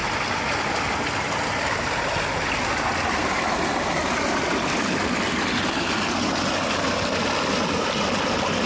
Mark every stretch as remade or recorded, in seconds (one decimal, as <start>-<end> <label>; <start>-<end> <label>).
0.0-8.7 recorded